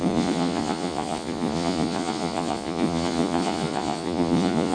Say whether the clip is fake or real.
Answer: fake